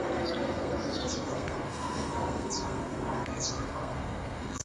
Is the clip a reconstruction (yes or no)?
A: yes